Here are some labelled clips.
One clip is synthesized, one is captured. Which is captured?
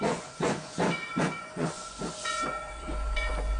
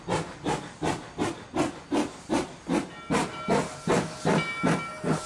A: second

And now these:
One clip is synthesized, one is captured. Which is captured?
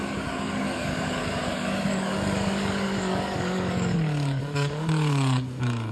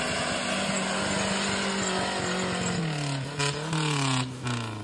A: second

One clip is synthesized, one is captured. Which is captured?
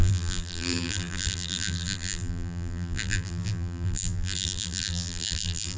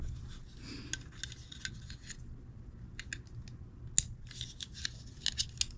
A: second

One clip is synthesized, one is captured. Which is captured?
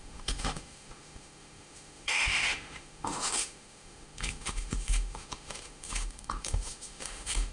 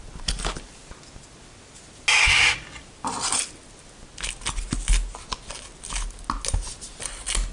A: second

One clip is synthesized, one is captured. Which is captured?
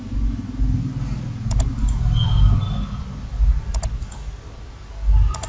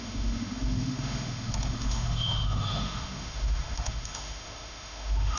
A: first